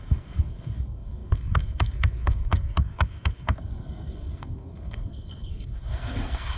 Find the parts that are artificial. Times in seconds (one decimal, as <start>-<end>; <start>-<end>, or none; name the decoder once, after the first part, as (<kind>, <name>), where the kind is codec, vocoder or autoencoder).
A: 0.0-6.6 (codec, SNAC)